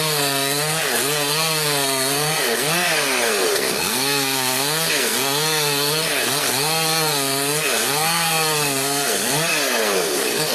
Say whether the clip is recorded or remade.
remade